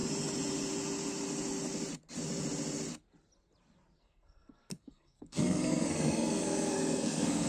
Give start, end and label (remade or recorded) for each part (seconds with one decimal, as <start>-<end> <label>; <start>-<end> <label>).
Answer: 0.0-4.0 recorded; 4.0-7.5 remade